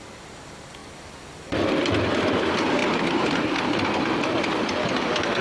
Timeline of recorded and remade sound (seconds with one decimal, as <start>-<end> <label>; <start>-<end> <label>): 0.0-5.4 recorded